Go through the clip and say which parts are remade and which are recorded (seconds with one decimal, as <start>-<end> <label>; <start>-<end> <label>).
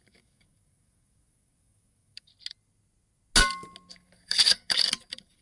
0.0-2.3 remade; 2.3-3.9 recorded; 3.9-5.4 remade